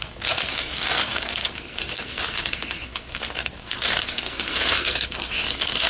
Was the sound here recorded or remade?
remade